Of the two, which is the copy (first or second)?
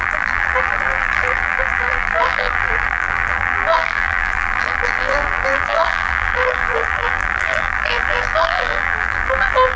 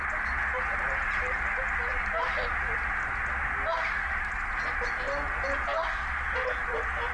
first